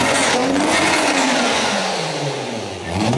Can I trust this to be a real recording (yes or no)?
no